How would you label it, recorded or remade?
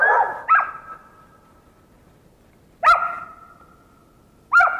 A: recorded